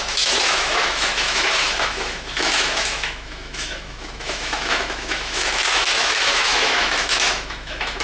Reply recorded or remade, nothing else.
remade